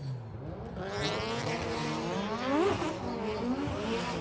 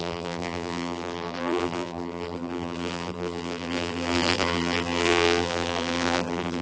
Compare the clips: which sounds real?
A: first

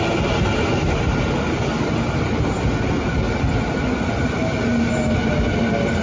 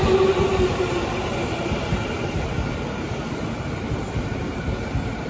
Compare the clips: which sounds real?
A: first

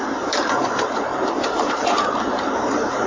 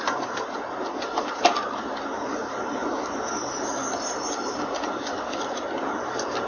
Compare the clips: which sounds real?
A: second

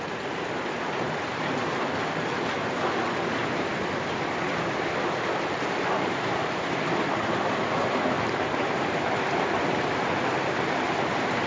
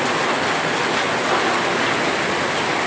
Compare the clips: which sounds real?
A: second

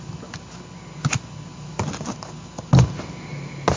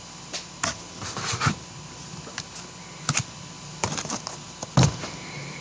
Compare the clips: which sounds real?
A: first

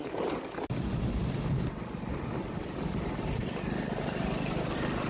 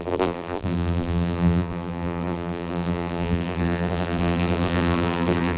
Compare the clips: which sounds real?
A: first